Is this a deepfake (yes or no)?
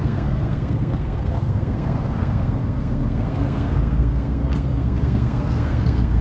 yes